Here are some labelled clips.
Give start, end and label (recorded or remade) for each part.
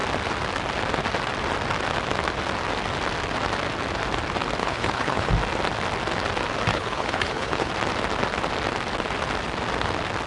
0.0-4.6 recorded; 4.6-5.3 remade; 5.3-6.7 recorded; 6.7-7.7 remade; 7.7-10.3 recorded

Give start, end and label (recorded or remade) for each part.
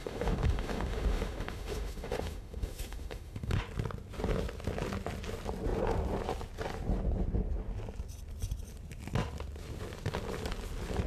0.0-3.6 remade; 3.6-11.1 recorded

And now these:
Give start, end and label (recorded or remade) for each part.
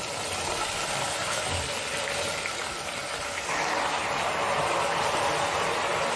0.0-1.9 recorded; 1.9-2.6 remade; 2.6-6.2 recorded